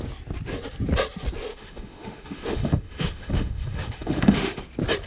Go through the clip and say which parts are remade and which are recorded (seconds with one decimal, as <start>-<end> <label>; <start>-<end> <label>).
0.0-1.5 recorded; 1.5-4.6 remade; 4.6-5.1 recorded